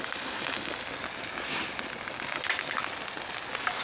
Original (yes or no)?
yes